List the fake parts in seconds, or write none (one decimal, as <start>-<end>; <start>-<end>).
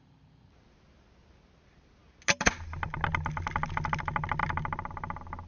none